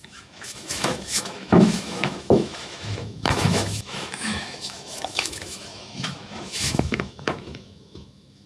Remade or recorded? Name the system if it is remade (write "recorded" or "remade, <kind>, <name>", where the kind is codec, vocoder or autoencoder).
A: remade, autoencoder, DAC-VAE